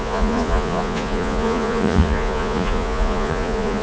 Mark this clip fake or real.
fake